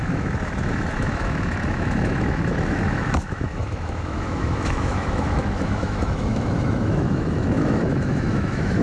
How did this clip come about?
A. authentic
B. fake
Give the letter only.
B